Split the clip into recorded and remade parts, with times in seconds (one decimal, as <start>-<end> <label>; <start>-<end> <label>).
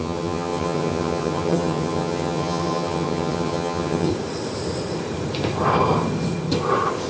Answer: 0.0-4.1 remade; 4.1-7.1 recorded